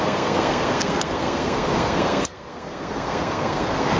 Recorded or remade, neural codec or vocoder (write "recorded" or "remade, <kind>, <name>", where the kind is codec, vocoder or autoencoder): remade, codec, SNAC